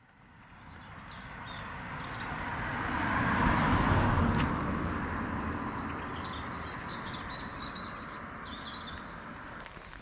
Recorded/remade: recorded